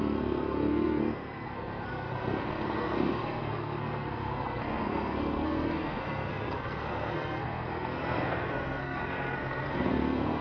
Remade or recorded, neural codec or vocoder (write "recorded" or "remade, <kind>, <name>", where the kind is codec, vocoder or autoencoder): remade, codec, SNAC